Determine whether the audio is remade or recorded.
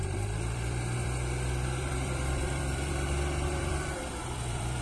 remade